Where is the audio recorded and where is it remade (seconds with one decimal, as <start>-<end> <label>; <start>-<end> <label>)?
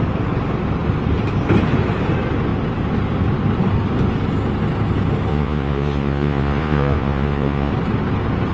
0.0-5.3 recorded; 5.3-7.7 remade; 7.7-8.5 recorded